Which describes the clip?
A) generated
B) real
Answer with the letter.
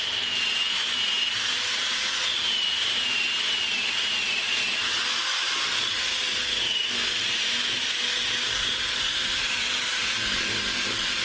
B